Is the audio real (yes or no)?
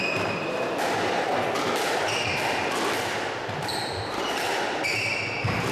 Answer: no